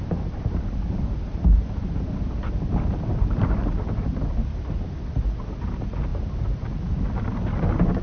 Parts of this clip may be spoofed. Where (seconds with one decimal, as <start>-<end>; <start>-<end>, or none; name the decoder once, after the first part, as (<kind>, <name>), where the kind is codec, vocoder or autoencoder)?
none